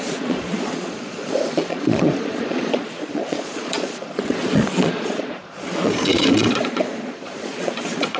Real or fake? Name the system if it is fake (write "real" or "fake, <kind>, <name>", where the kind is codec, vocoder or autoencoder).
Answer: fake, vocoder, Vocos